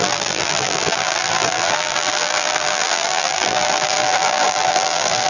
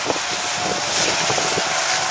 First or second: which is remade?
first